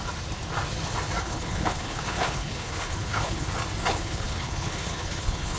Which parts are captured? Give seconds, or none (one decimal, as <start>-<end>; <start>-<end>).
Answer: 0.0-1.2; 3.5-3.9